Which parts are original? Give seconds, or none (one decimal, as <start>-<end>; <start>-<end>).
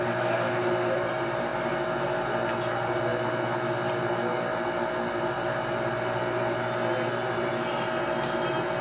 0.0-8.8